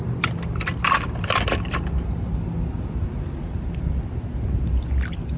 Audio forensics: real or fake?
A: real